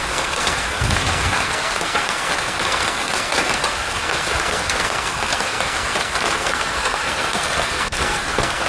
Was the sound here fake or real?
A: fake